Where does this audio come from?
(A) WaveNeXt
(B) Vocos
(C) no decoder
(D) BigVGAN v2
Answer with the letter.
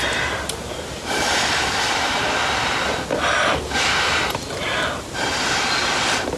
C